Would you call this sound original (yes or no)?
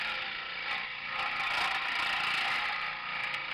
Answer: yes